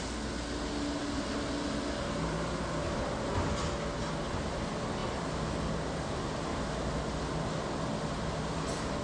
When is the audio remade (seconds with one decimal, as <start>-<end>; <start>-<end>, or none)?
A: none